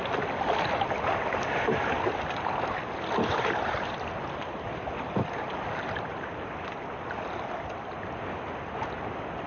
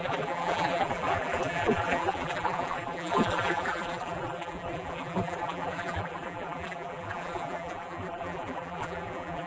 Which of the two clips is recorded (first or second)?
first